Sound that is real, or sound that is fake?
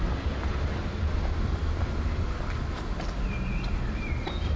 real